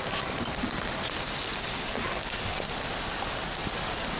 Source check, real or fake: real